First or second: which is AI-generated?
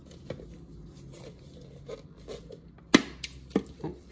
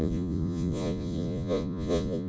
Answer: second